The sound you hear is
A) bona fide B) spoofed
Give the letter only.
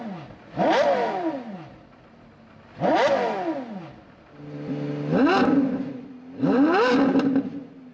A